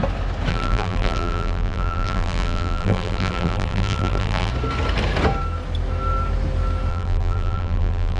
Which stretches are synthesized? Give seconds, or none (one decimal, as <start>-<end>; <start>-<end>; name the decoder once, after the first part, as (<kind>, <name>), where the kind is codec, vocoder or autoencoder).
0.5-4.5 (vocoder, BigVGAN v2); 6.9-8.2